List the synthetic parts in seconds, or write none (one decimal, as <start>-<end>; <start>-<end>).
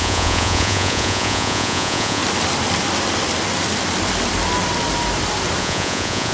0.0-2.2; 5.6-6.3